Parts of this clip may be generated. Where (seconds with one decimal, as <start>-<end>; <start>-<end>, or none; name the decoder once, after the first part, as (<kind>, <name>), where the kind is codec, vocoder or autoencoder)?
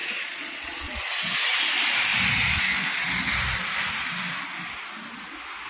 0.0-1.6 (vocoder, Vocos)